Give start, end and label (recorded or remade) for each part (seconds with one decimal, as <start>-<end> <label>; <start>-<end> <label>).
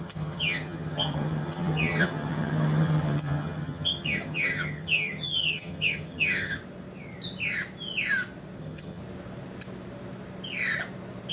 0.0-6.6 remade; 6.6-8.6 recorded; 8.6-9.0 remade; 9.0-11.3 recorded